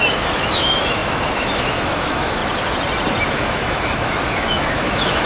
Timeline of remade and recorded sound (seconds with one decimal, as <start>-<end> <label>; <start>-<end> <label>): 0.0-2.4 remade; 2.4-3.3 recorded; 3.3-5.3 remade